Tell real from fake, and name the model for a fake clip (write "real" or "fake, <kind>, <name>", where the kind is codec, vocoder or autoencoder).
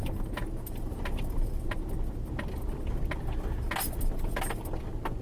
real